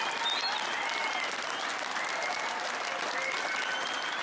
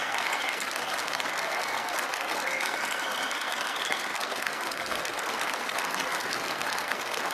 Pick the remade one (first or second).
second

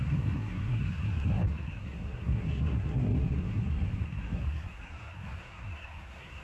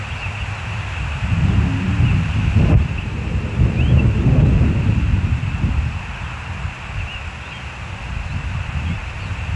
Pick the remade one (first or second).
first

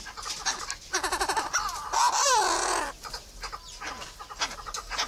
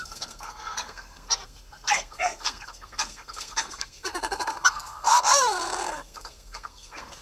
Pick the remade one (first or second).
second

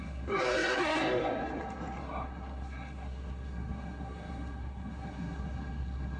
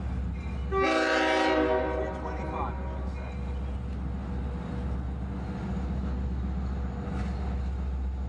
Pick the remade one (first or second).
first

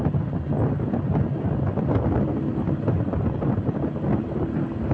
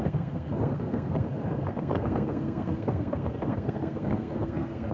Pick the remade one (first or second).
second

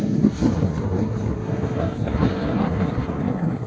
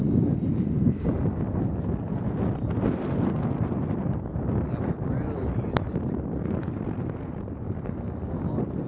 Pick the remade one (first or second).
first